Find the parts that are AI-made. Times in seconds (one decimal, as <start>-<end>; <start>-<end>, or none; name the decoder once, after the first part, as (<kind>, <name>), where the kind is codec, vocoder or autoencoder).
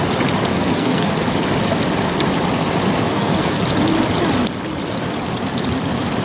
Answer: 0.5-1.1 (codec, SNAC); 3.1-3.6